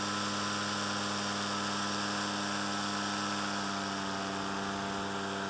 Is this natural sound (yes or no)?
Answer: yes